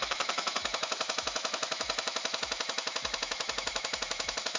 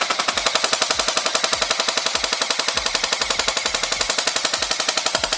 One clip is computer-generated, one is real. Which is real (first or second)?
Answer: second